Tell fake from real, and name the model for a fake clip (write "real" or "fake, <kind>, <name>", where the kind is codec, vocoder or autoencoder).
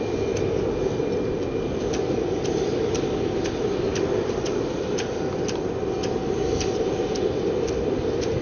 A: real